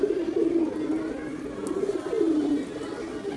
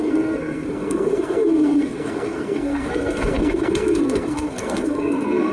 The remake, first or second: second